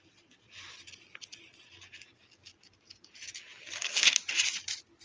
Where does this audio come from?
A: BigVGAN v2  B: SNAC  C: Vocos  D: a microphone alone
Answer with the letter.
D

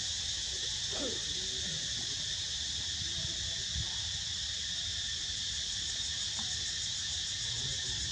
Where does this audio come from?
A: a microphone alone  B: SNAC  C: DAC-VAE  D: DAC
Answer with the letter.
A